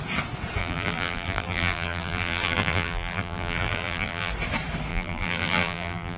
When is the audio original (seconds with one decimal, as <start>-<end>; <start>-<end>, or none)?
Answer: 0.0-0.6; 4.3-4.9